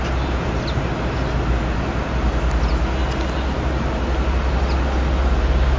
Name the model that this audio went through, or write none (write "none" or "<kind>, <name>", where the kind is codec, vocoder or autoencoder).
none